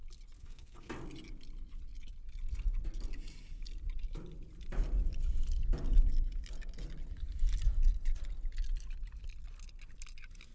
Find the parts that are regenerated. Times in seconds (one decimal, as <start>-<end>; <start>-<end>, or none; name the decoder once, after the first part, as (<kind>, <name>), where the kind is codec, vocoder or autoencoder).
0.4-0.9 (codec, SNAC)